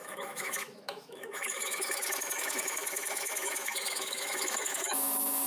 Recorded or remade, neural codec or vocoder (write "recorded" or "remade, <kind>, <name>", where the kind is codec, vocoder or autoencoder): remade, autoencoder, DAC-VAE